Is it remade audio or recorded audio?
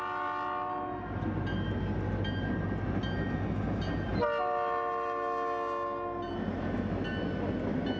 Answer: recorded